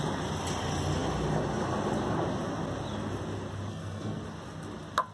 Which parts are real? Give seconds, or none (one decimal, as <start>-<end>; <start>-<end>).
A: 0.0-3.7; 4.2-5.1